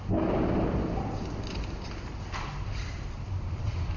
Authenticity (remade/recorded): recorded